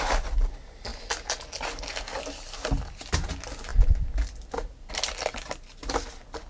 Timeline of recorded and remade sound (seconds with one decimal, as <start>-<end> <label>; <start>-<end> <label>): 0.0-6.5 recorded